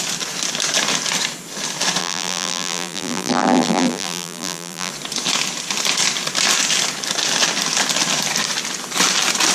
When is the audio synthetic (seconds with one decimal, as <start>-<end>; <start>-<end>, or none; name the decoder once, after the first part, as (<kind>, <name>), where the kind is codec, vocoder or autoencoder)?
2.0-4.9 (vocoder, BigVGAN v2)